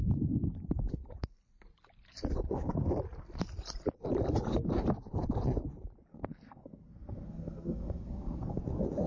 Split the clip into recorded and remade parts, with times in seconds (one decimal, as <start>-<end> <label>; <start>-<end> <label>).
0.0-6.1 recorded; 6.1-8.6 remade; 8.6-9.1 recorded